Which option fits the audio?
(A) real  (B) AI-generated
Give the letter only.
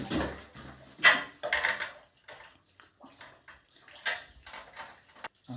A